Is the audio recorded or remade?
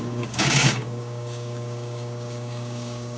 remade